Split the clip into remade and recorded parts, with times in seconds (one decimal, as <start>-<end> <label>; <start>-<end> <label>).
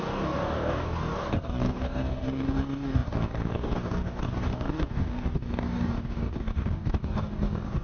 0.0-7.8 remade